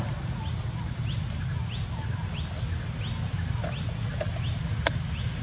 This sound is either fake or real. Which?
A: real